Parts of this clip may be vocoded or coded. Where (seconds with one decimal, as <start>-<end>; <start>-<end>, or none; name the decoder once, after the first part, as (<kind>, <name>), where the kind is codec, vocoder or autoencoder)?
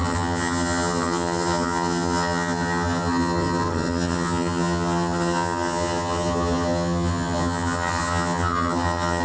0.0-9.2 (vocoder, HiFi-GAN)